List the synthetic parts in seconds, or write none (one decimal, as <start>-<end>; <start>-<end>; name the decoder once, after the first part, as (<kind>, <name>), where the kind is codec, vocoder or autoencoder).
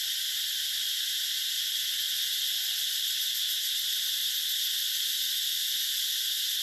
none